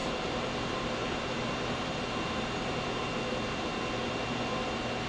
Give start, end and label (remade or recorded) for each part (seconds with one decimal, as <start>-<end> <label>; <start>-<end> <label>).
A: 0.0-3.1 remade; 3.1-5.1 recorded